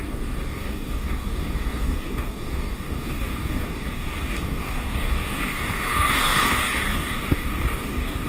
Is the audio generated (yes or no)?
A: yes